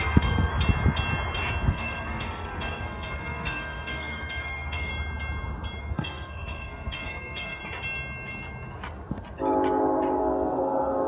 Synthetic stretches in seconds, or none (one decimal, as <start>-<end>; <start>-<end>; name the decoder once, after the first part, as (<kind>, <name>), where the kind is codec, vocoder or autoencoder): 0.0-0.5 (codec, SNAC); 1.7-4.9; 5.8-7.6; 10.2-11.1